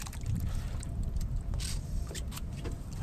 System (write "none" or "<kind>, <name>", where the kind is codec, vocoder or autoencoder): vocoder, BigVGAN v2